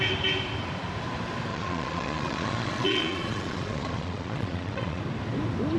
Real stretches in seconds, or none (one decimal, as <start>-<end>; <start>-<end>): 0.0-1.5; 5.0-5.8